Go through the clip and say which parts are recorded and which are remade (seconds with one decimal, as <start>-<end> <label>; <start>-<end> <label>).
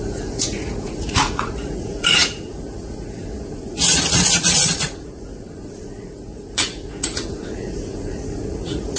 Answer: 0.0-9.0 remade